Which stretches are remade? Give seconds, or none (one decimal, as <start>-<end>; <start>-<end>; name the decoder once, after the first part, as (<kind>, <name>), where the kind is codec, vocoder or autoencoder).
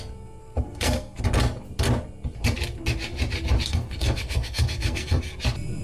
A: 0.4-1.2 (codec, SNAC); 3.7-5.2